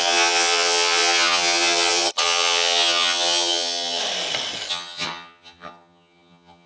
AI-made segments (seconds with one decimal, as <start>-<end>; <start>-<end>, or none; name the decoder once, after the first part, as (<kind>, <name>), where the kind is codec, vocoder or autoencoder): 0.0-4.0 (vocoder, HiFi-GAN); 4.7-6.7